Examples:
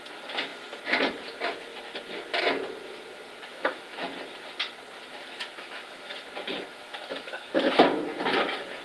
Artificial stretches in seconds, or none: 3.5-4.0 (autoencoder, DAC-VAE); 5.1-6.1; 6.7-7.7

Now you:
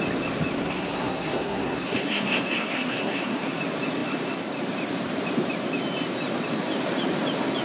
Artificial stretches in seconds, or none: 0.6-3.6 (codec, SNAC)

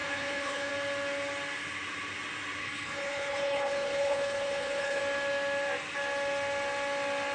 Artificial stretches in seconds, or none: 0.0-0.7 (codec, HILCodec); 2.6-5.0